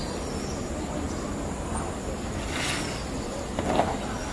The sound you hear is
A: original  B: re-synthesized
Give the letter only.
A